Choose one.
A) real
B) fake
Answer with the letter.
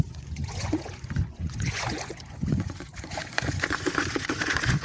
B